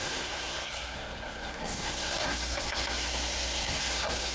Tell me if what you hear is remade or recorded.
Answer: remade